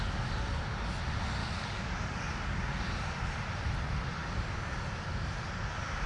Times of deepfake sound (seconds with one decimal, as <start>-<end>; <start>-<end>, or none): 1.4-2.3